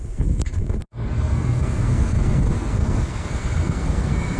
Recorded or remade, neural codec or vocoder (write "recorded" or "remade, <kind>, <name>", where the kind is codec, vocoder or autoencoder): remade, codec, SNAC